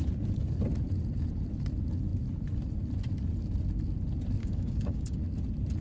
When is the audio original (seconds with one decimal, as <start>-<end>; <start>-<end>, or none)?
0.0-4.4; 5.2-5.8